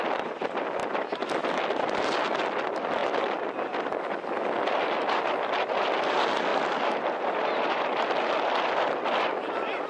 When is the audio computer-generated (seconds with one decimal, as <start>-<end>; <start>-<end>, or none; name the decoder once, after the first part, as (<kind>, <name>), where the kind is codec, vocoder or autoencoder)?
6.5-9.9 (vocoder, BigVGAN v2)